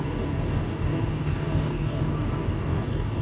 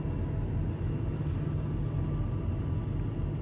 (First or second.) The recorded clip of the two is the second